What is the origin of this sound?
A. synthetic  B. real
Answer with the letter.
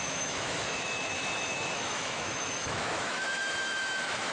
A